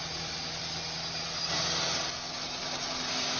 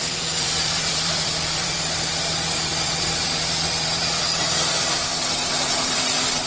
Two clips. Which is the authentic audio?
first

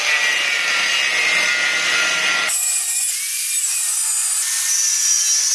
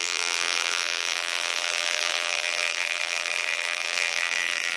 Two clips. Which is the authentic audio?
first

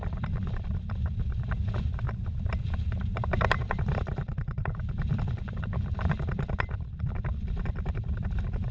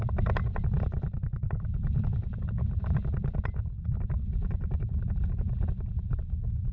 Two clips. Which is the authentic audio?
second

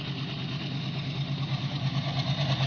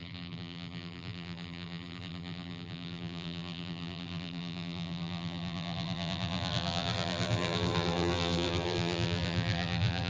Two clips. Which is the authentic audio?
first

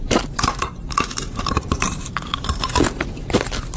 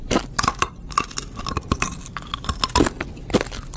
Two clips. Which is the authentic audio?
second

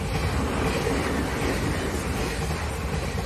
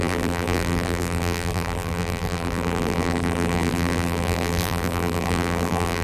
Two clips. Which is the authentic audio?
first